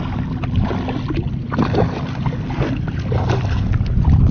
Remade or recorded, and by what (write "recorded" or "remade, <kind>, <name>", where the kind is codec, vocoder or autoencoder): recorded